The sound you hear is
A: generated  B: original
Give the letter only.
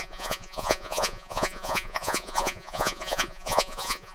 A